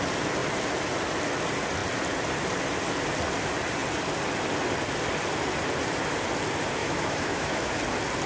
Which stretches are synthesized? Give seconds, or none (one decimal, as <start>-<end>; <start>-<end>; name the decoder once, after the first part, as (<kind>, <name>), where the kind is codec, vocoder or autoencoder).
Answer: 6.8-7.7 (autoencoder, DAC-VAE)